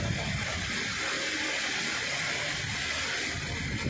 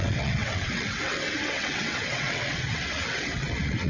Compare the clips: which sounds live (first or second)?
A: first